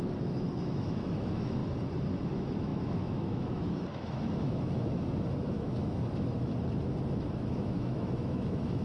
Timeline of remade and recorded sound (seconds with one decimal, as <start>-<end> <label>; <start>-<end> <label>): 0.0-1.6 remade; 1.6-2.3 recorded; 2.3-6.5 remade; 6.5-7.4 recorded; 7.4-8.8 remade